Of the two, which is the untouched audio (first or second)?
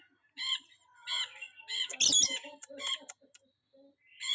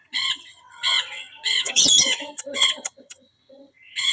first